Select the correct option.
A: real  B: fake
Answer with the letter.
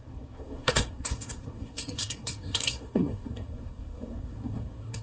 B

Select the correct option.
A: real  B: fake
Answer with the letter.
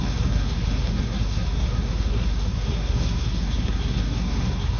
B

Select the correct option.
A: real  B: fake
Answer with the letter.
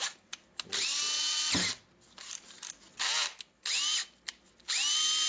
A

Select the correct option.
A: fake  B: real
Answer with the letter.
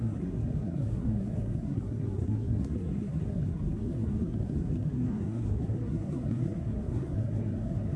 A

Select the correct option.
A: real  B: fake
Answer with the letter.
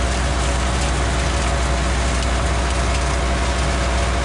A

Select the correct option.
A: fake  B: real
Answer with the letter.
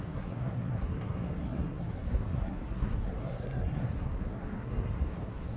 A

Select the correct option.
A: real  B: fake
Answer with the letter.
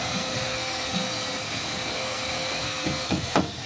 B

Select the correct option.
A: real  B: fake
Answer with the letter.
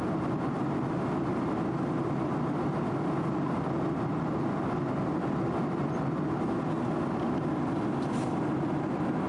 A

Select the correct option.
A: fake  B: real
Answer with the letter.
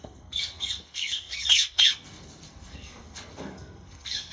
A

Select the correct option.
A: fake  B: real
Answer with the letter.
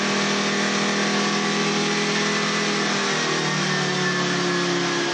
B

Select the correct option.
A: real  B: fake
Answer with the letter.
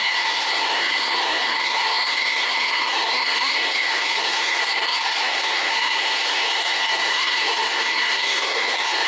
B